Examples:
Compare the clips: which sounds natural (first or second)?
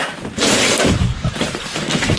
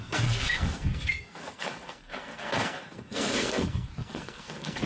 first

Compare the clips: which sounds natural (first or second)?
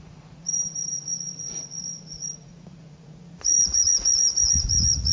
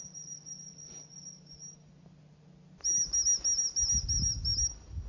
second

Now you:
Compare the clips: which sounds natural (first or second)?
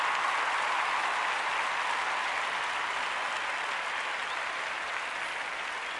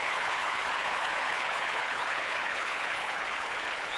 first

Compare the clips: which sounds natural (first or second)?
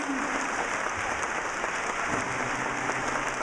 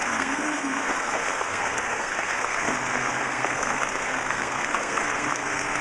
first